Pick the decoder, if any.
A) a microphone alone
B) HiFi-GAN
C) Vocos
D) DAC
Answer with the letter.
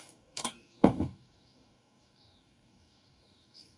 D